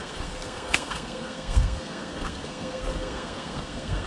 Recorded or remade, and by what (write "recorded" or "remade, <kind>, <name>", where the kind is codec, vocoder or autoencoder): remade, codec, SNAC